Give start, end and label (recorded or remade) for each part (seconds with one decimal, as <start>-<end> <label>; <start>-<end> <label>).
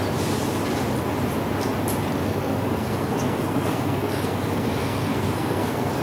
0.0-2.2 recorded; 2.2-6.0 remade